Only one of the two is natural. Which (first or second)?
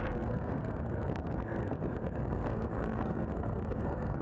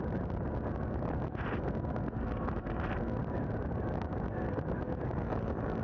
second